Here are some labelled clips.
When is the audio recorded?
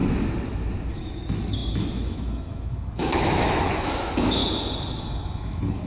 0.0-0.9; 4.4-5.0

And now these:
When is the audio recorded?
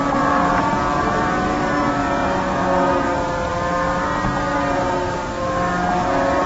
0.0-2.0; 2.6-6.5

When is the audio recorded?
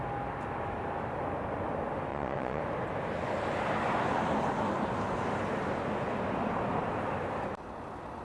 0.0-2.1; 2.6-8.2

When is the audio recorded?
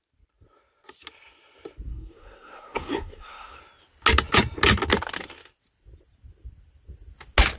0.0-1.9; 3.6-7.6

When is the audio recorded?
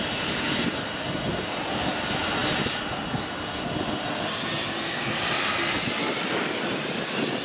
0.0-7.4